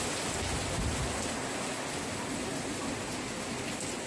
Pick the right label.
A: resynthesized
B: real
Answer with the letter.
B